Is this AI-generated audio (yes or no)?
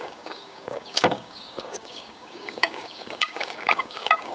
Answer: yes